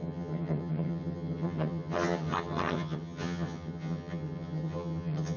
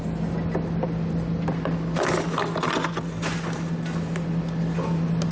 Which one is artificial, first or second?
first